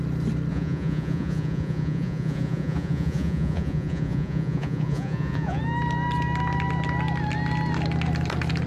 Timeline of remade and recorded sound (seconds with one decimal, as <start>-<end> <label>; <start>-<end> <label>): 0.0-0.5 recorded; 0.5-5.6 remade; 5.6-8.7 recorded